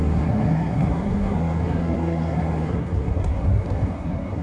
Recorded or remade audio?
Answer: remade